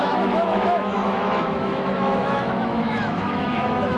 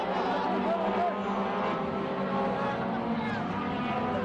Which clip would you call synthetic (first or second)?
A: first